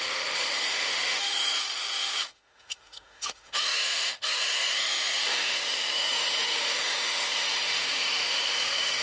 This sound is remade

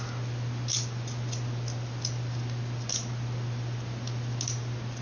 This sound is recorded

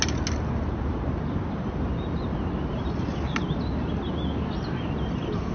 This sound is recorded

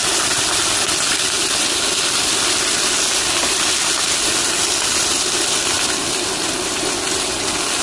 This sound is remade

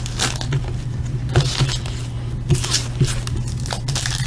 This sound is recorded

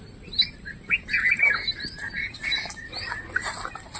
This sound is recorded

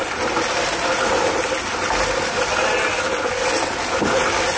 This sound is recorded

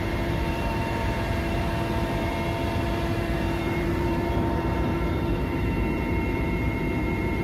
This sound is remade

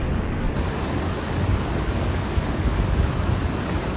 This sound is remade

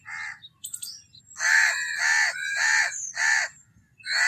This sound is recorded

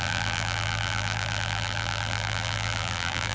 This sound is remade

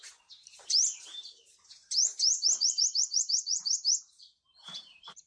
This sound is remade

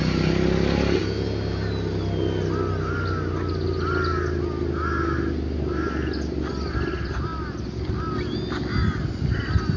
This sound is recorded